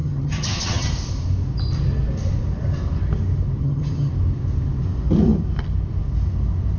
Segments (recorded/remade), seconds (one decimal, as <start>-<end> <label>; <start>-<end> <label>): 0.0-0.9 remade; 0.9-3.6 recorded; 3.6-4.1 remade; 4.1-6.8 recorded